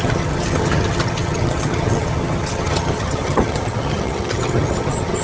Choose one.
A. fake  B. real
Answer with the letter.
A